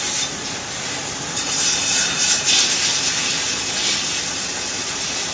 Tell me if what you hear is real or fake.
real